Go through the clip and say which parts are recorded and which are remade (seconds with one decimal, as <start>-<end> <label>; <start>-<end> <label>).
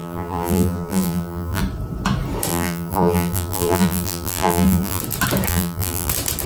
0.0-1.6 remade; 1.6-2.5 recorded; 2.5-5.0 remade; 5.0-5.5 recorded; 5.5-6.1 remade; 6.1-6.5 recorded